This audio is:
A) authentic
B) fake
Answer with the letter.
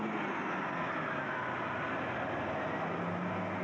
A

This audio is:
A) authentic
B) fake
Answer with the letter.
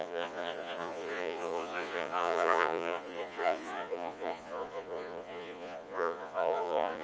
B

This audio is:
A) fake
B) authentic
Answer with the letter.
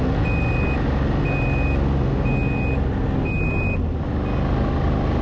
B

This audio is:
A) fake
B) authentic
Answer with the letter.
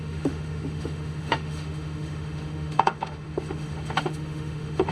A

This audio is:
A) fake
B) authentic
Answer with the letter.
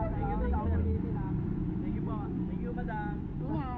B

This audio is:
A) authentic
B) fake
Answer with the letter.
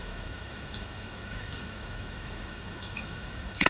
B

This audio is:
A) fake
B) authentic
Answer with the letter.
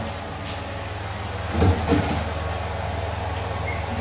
B